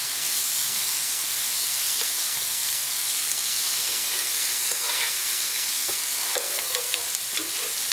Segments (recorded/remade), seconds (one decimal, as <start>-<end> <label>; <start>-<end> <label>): 0.0-7.0 remade; 7.0-7.9 recorded